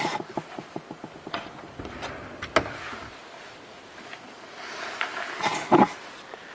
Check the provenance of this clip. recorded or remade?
recorded